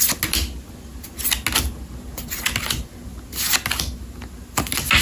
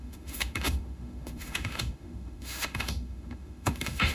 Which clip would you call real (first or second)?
first